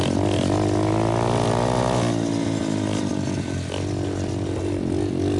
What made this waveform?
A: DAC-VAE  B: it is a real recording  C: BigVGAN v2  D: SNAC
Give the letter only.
B